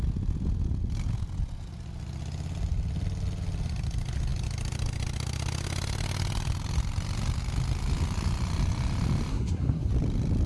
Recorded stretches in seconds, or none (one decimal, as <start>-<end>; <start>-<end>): 0.0-9.3; 9.9-10.5